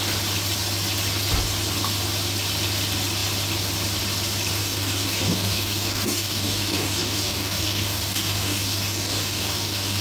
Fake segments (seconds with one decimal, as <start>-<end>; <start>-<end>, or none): 4.6-10.0